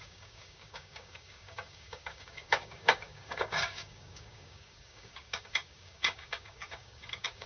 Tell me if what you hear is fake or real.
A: fake